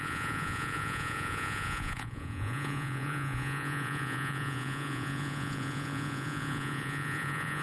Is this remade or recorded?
remade